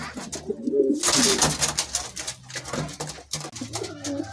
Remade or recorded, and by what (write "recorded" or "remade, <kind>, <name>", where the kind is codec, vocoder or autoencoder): recorded